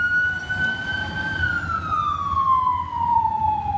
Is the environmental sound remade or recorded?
recorded